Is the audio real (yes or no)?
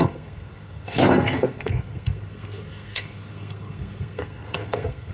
no